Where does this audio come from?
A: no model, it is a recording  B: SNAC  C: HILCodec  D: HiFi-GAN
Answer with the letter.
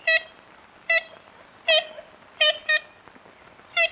A